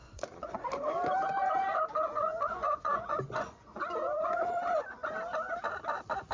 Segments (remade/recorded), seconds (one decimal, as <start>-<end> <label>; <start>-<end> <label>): 0.0-0.6 remade; 0.6-1.3 recorded; 1.3-5.1 remade; 5.1-6.3 recorded